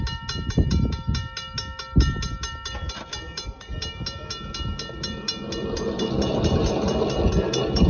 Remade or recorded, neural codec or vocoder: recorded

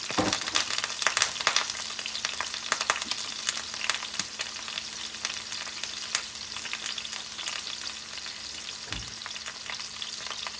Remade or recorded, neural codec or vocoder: recorded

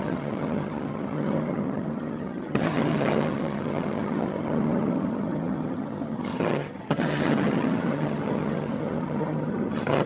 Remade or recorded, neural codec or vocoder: remade, vocoder, HiFi-GAN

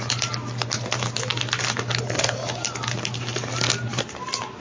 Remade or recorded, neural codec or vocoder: recorded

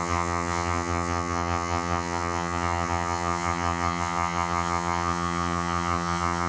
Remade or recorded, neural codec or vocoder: remade, vocoder, HiFi-GAN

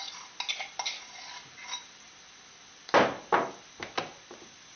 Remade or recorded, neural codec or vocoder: recorded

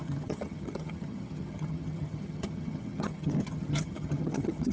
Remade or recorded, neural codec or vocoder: remade, vocoder, HiFi-GAN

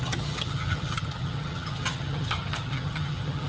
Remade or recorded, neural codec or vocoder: remade, vocoder, HiFi-GAN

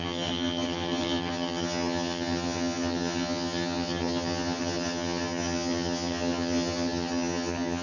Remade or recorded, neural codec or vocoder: remade, vocoder, HiFi-GAN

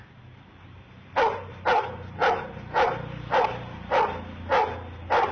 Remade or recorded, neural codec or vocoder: recorded